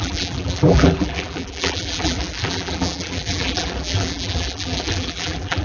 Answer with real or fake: fake